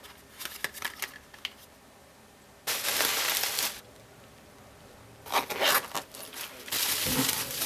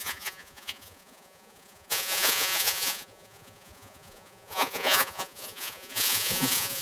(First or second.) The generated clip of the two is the second